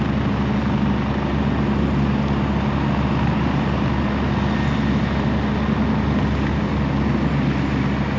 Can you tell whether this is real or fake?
real